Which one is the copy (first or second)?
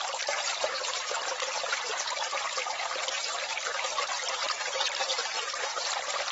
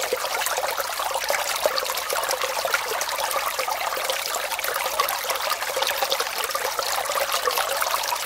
first